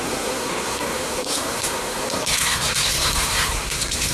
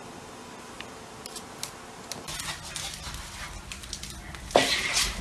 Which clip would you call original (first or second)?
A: second